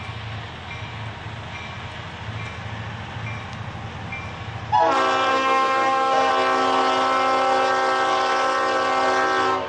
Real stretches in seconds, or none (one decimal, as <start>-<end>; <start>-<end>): 0.0-5.3; 6.3-9.7